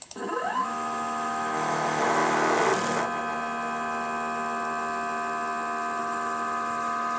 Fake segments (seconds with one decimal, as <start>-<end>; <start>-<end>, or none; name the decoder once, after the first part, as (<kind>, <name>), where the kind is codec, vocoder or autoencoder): 0.0-2.2 (autoencoder, DAC-VAE); 6.0-7.2